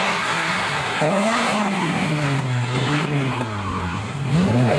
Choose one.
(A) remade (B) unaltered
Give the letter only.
A